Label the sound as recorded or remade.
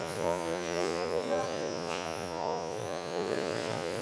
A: remade